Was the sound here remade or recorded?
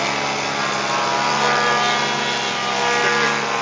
recorded